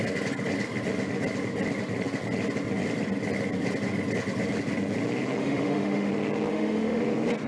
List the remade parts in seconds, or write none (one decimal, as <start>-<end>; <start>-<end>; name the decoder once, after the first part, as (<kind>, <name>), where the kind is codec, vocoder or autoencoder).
5.4-6.1 (autoencoder, DAC-VAE); 6.5-7.0